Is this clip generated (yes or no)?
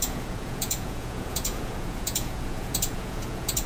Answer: yes